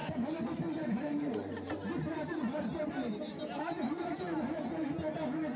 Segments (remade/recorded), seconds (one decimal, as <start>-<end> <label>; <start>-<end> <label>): 0.0-3.1 remade; 3.1-5.6 recorded